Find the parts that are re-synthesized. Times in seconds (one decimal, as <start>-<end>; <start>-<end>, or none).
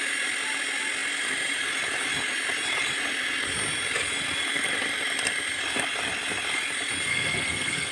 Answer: 7.1-7.9